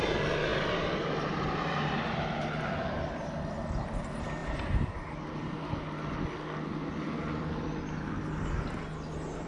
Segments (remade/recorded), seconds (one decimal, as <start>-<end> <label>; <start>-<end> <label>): 0.0-4.4 recorded; 4.4-5.6 remade; 5.6-9.5 recorded